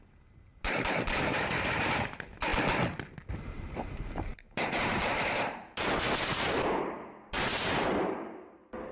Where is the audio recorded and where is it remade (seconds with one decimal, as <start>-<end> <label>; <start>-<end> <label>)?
0.0-2.5 remade; 2.5-3.3 recorded; 3.3-8.9 remade